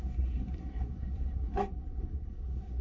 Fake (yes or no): yes